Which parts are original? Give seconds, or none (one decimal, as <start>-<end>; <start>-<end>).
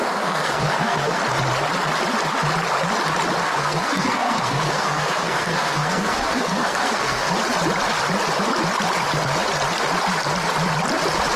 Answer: 1.2-3.4; 7.3-11.4